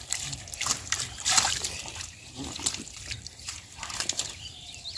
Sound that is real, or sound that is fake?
fake